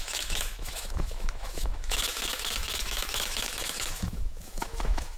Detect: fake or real fake